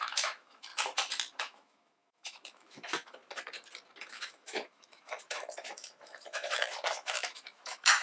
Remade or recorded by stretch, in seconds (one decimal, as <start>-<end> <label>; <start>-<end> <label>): 0.0-0.7 remade; 0.7-1.4 recorded; 1.4-3.2 remade; 3.2-4.1 recorded; 4.1-8.0 remade